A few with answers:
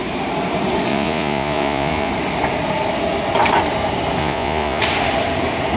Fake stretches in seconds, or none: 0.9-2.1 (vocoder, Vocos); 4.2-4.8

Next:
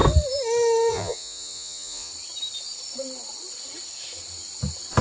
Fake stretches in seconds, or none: 0.9-2.1 (vocoder, Vocos)

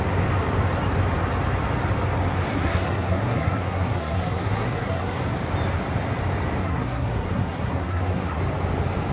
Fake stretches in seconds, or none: 2.5-5.2 (codec, SNAC); 6.6-8.4

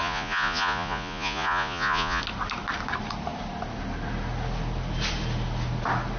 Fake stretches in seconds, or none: 0.0-2.2 (vocoder, Vocos)

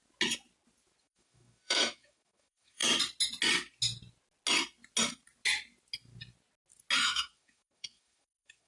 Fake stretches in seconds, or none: 1.0-2.8 (autoencoder, DAC-VAE); 7.0-8.7

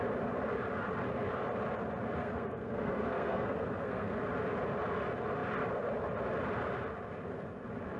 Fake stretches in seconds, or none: 2.2-4.2 (codec, SNAC)

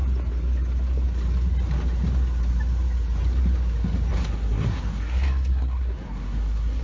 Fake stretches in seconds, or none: 4.1-6.8 (codec, SNAC)